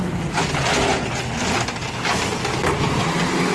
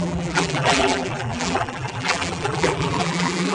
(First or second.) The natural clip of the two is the first